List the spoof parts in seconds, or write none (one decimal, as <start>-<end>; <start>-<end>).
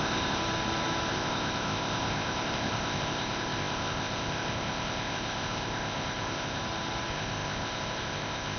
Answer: 0.0-0.4; 1.1-6.6; 7.1-8.6